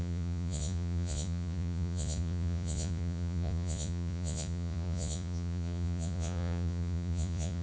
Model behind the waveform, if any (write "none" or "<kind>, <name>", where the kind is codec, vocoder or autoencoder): vocoder, Vocos